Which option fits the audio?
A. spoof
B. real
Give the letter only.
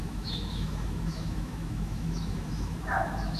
A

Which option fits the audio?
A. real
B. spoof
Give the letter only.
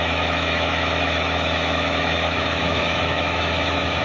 B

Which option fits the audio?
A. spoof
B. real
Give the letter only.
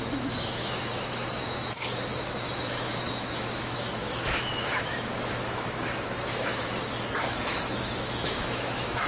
A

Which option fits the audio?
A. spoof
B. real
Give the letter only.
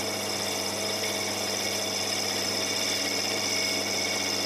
B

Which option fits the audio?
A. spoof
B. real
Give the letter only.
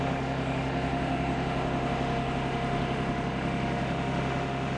A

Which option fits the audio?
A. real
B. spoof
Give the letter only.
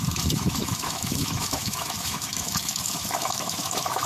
B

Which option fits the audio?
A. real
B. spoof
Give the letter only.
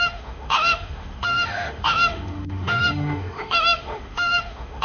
B